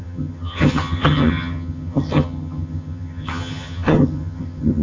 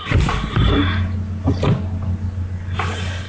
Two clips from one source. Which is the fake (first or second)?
first